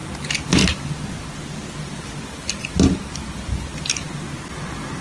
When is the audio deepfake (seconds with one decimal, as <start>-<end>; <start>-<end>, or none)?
none